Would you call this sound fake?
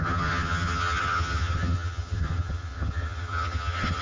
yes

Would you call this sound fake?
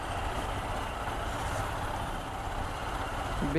no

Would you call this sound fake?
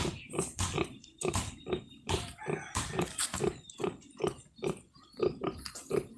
yes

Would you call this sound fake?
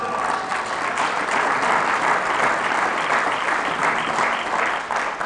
no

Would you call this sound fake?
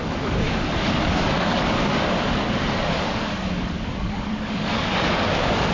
yes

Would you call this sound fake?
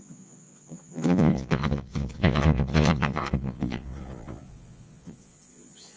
yes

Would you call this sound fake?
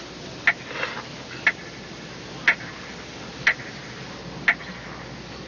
no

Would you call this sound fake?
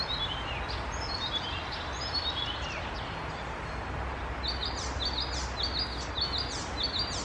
no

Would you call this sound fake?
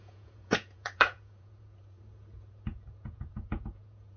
yes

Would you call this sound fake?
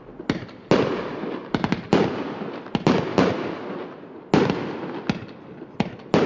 no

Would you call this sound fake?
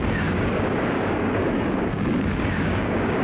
yes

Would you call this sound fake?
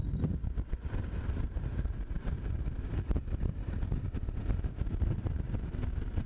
yes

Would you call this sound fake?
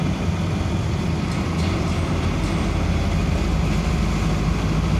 no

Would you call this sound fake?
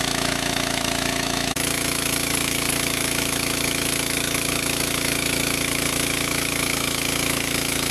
yes